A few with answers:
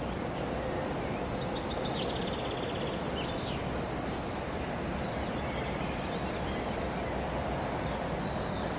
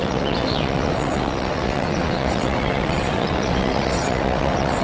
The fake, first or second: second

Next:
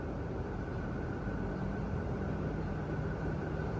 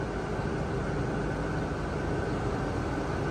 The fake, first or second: first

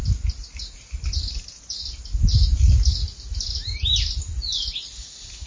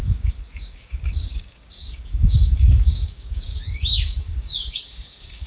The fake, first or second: second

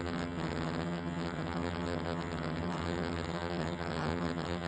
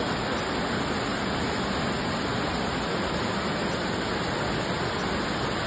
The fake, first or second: first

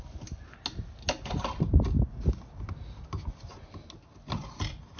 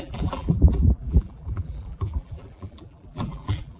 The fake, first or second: second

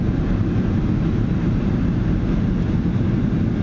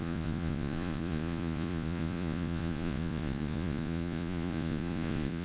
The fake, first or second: second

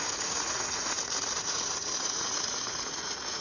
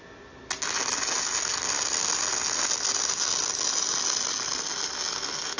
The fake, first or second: first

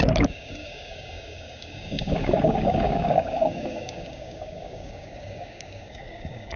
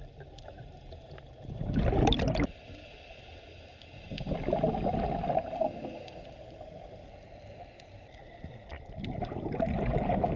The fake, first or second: first